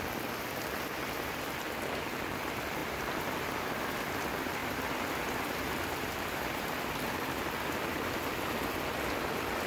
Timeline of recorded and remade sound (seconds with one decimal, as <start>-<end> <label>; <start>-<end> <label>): 0.0-4.6 remade; 4.6-6.1 recorded; 6.1-9.7 remade